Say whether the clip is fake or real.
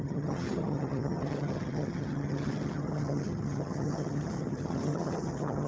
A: fake